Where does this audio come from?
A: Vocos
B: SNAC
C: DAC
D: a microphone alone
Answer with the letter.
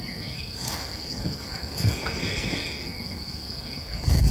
B